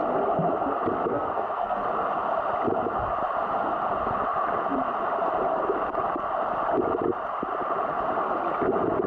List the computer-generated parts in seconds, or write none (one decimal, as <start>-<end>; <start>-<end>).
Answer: 1.1-1.8